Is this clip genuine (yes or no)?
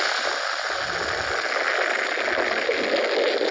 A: yes